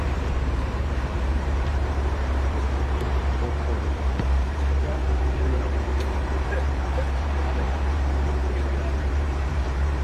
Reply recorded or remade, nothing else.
remade